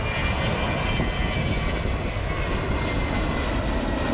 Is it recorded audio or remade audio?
recorded